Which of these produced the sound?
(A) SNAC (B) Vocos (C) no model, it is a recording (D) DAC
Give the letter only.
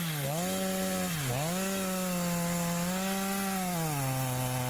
C